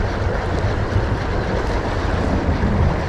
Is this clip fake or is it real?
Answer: real